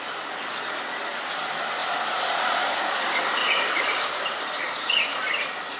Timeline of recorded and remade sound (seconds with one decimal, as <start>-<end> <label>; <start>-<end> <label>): 0.0-3.4 recorded; 3.4-5.8 remade